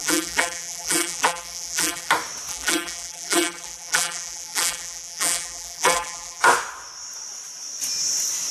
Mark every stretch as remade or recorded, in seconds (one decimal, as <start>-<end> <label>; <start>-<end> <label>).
0.0-2.1 remade; 2.1-2.5 recorded; 2.5-6.4 remade; 6.4-8.5 recorded

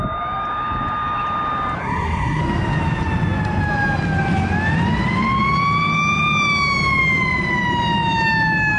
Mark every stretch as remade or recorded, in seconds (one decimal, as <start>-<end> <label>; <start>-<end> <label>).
0.0-1.8 recorded; 1.8-2.4 remade; 2.4-8.8 recorded

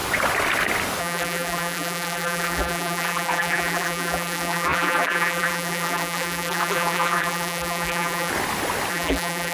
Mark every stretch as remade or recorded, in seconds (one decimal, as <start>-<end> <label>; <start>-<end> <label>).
0.0-1.0 recorded; 1.0-8.3 remade; 8.3-8.9 recorded; 8.9-9.5 remade

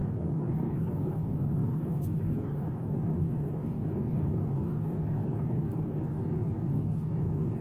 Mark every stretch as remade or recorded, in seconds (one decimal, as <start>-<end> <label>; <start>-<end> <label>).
0.0-7.6 remade

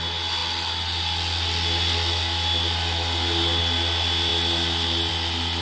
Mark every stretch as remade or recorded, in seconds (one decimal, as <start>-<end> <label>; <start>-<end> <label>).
0.0-5.6 recorded

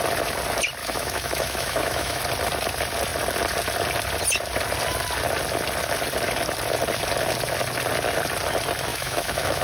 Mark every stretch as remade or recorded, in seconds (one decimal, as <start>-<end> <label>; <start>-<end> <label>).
0.0-0.8 recorded; 0.8-2.2 remade; 2.2-8.9 recorded; 8.9-9.6 remade

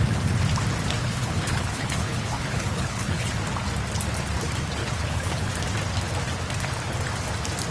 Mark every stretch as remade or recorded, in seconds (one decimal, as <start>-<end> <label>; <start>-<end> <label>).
0.0-1.0 recorded; 1.0-3.3 remade; 3.3-4.8 recorded; 4.8-5.5 remade; 5.5-7.7 recorded